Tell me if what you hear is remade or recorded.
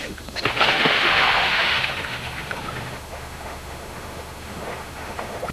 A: remade